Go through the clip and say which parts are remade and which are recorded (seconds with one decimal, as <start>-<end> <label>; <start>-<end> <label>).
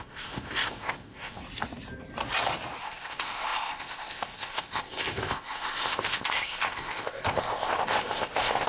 0.0-1.4 remade; 1.4-2.8 recorded; 2.8-8.7 remade